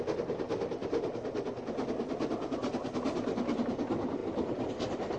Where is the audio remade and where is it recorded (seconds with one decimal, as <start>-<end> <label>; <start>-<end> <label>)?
0.0-5.2 recorded